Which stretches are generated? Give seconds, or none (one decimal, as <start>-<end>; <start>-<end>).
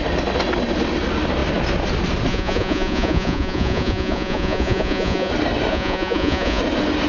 2.3-5.3; 5.7-6.6